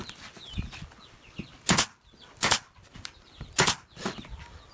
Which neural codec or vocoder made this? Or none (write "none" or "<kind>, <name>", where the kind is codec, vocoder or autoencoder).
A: none